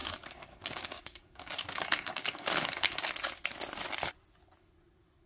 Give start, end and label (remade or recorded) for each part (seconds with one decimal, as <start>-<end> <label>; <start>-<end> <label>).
0.0-3.1 remade; 3.1-5.3 recorded